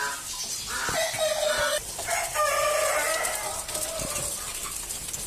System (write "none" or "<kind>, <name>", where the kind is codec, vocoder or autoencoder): none